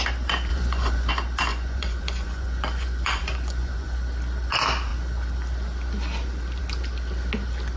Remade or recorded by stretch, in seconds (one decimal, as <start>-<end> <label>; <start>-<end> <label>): 0.0-0.5 recorded; 0.5-1.1 remade; 1.1-1.5 recorded; 1.5-4.0 remade; 4.0-7.8 recorded